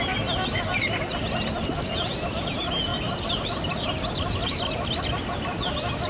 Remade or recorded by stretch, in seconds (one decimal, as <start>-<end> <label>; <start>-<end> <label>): 0.0-6.1 recorded